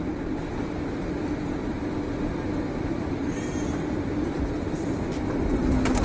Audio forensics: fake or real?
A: real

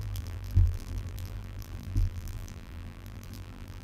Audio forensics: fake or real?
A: fake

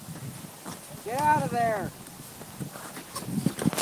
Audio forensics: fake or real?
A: real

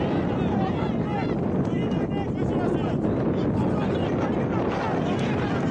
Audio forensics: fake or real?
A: real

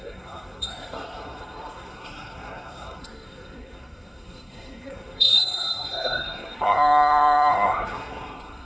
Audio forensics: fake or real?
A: fake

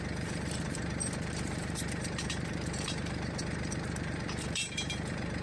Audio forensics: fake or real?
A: fake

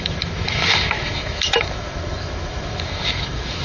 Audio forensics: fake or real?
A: fake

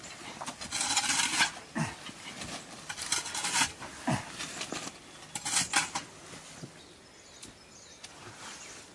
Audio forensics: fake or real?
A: real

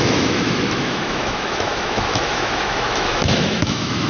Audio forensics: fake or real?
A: fake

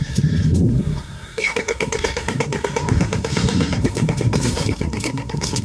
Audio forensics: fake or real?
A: fake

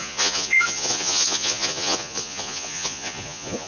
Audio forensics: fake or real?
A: fake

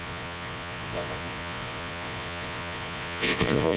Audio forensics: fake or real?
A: fake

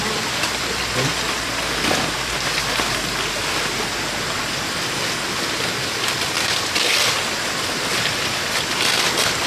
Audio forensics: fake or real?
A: real